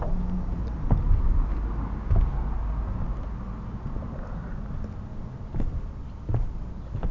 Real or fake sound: real